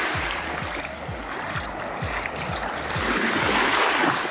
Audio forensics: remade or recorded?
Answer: recorded